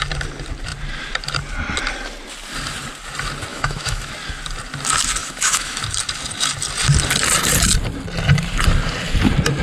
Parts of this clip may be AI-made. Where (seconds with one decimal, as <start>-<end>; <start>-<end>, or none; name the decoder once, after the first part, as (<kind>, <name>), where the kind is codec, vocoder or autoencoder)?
3.5-4.1 (autoencoder, DAC-VAE); 5.2-5.8